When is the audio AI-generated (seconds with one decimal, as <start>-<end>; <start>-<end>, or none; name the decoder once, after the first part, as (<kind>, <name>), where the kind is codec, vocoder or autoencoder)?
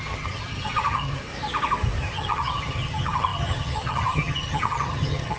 0.0-1.2 (vocoder, HiFi-GAN); 2.0-5.4